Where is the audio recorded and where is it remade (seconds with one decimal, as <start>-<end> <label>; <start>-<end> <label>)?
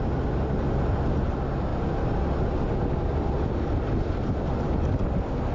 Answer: 0.0-5.5 recorded